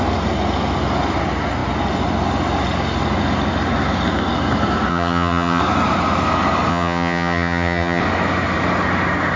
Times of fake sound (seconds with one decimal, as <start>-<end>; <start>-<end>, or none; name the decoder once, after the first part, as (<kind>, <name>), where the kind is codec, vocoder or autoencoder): 4.9-5.6 (vocoder, HiFi-GAN); 6.7-8.0